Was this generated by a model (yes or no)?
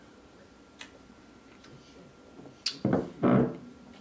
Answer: no